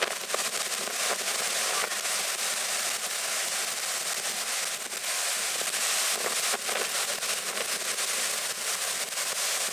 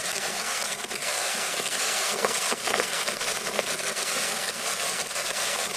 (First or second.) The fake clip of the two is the second